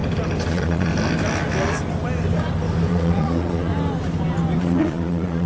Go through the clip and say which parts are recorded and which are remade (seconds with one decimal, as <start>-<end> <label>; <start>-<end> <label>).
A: 0.0-0.5 recorded; 0.5-0.9 remade; 0.9-2.9 recorded; 2.9-3.7 remade; 3.7-4.6 recorded; 4.6-5.5 remade